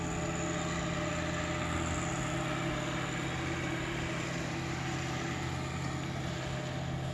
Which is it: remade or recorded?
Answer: recorded